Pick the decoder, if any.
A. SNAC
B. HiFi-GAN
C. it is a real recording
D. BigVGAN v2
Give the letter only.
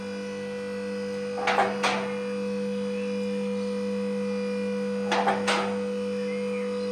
C